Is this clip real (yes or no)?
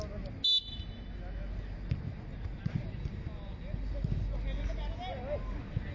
yes